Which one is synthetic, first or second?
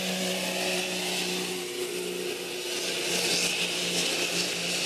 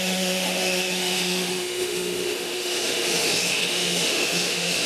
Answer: second